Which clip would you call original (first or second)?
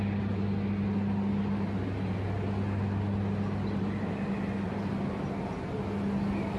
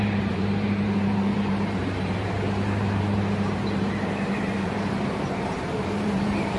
first